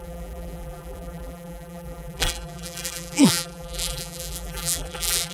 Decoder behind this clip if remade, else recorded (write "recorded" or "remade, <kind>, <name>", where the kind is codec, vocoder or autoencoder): remade, vocoder, BigVGAN v2